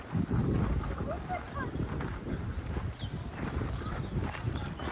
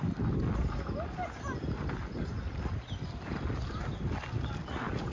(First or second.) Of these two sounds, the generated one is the first